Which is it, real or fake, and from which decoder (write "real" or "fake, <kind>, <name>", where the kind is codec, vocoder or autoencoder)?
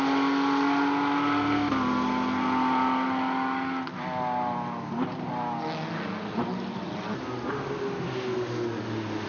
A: real